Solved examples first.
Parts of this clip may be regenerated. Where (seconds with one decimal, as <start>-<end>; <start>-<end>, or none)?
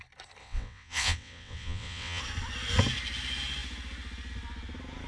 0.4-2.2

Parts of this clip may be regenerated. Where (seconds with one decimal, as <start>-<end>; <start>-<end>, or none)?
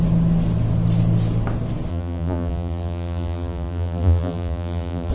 1.9-5.1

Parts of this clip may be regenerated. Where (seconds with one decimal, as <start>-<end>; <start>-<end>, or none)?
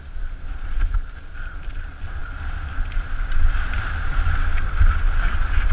none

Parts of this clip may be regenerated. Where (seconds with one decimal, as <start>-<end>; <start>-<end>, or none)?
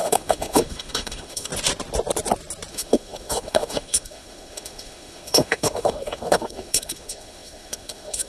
0.0-1.5; 2.7-8.3